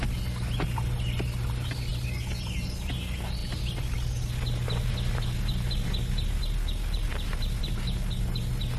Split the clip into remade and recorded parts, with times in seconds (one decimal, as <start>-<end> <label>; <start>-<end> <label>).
0.0-8.8 recorded